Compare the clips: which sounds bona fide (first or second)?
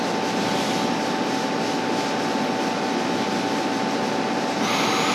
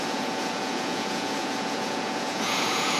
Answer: first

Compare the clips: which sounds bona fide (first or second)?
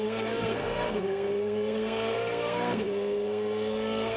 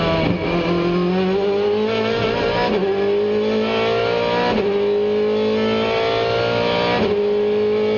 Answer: second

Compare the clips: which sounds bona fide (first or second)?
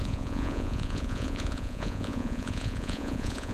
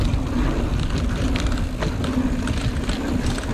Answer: second